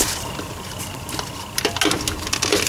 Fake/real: real